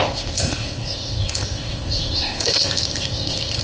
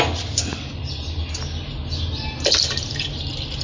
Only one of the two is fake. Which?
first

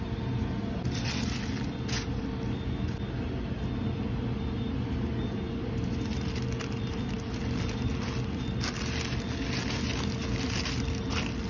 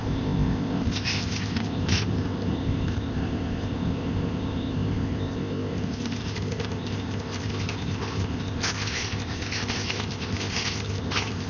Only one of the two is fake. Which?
second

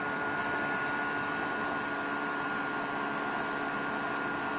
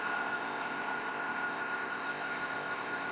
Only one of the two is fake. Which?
second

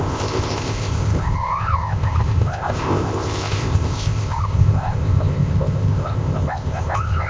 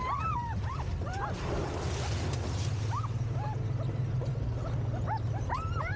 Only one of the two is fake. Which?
first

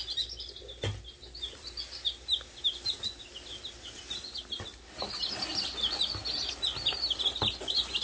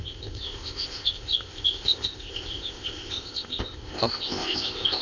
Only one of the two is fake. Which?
second